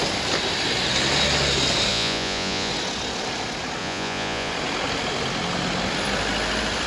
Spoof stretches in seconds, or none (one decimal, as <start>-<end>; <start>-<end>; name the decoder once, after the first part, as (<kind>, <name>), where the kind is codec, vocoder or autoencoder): 1.9-2.7 (vocoder, Vocos); 3.8-4.5